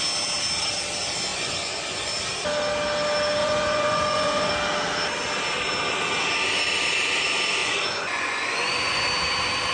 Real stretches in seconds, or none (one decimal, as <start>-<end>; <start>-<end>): 0.0-1.3; 2.1-3.4; 4.5-7.6; 9.1-9.7